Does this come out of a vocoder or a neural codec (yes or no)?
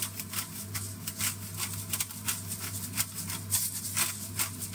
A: no